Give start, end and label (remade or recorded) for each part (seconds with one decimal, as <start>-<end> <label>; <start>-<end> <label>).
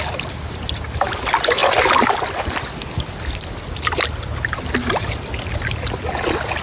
0.0-6.6 recorded